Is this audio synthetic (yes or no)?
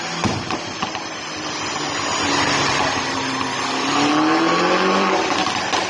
no